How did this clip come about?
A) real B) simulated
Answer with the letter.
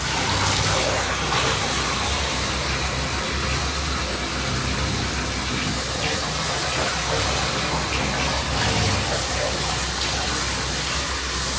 A